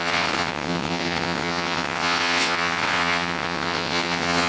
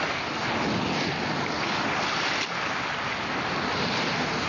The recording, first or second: second